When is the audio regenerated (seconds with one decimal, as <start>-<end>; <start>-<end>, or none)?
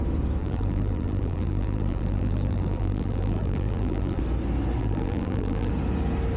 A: 0.4-4.2; 4.8-5.7